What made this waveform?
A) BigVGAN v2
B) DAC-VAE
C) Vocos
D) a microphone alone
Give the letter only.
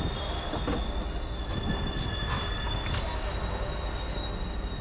D